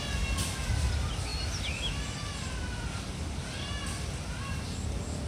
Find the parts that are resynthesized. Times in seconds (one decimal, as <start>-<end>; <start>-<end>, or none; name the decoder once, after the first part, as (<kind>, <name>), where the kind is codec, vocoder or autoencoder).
none